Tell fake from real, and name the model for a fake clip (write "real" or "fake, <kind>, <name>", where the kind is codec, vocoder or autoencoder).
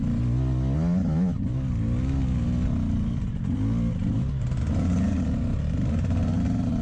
real